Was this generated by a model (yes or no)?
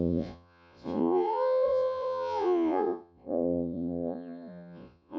yes